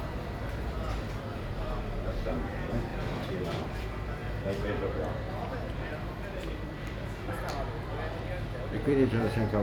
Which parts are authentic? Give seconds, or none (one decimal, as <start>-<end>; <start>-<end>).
4.2-5.7